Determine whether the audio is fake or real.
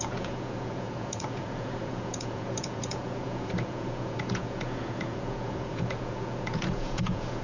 fake